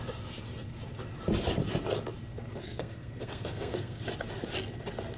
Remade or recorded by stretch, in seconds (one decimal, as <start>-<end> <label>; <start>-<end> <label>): 0.0-2.6 recorded; 2.6-4.0 remade; 4.0-5.2 recorded